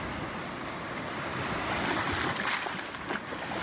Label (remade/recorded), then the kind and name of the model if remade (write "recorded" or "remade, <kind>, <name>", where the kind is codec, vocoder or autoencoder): recorded